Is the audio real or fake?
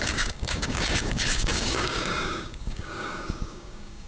fake